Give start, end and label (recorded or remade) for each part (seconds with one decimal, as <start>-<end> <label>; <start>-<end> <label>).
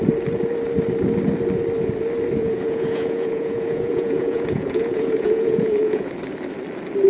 0.0-2.4 recorded; 2.4-6.1 remade; 6.1-7.1 recorded